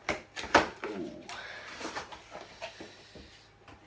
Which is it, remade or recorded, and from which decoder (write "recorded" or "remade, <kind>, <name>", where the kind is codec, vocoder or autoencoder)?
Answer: recorded